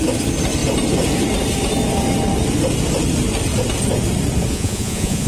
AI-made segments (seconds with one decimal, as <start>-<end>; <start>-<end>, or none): 4.5-5.3